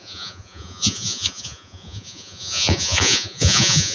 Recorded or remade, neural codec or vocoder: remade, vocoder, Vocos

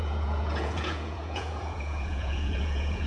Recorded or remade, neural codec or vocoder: remade, vocoder, Vocos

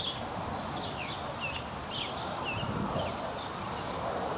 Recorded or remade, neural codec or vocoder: recorded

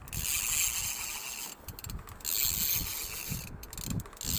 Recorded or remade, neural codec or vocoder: recorded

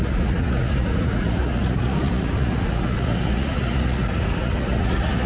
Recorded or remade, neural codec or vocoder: remade, vocoder, Vocos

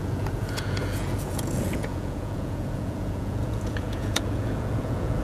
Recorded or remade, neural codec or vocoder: remade, vocoder, Vocos